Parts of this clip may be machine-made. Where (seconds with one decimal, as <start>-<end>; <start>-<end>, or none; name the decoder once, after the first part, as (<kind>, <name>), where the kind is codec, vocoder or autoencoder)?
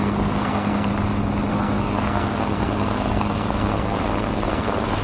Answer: 0.0-0.9 (codec, SNAC); 1.5-5.0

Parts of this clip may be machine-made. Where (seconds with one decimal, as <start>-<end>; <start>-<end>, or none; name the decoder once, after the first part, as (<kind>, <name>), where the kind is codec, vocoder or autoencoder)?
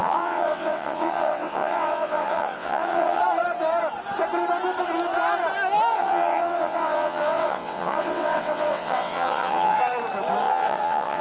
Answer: 0.0-3.2 (vocoder, WaveNeXt); 5.9-9.8; 10.4-11.2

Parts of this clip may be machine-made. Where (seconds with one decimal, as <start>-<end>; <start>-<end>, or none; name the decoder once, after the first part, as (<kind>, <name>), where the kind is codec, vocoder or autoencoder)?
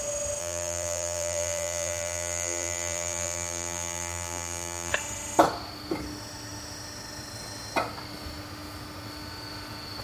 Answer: 0.4-4.9 (vocoder, BigVGAN v2)